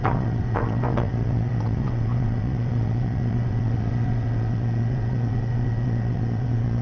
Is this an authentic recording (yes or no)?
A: no